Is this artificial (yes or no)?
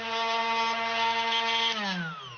no